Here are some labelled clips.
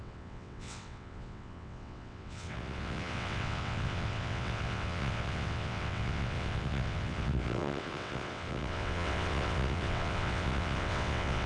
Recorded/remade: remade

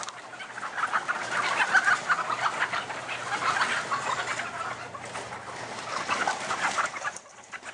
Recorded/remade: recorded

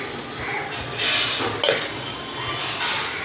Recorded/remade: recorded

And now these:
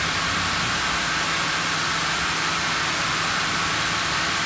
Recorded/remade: recorded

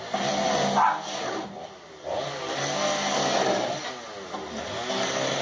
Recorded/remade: recorded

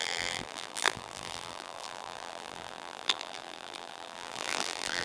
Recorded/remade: remade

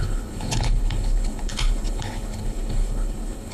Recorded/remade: remade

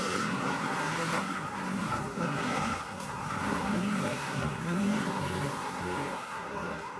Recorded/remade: remade